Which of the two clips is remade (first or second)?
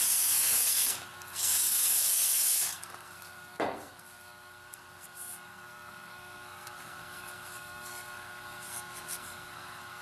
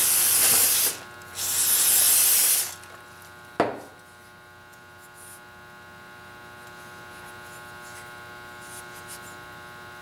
first